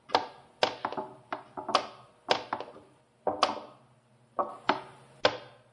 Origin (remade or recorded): recorded